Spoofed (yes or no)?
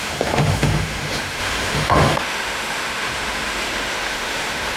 yes